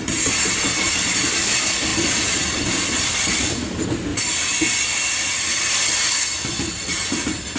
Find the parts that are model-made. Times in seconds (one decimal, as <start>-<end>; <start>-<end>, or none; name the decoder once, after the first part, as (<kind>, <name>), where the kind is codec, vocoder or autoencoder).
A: 4.1-5.6 (vocoder, BigVGAN v2)